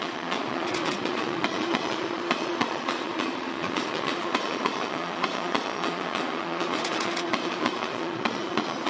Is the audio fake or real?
fake